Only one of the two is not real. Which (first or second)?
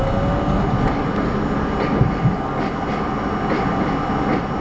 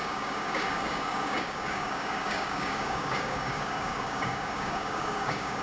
second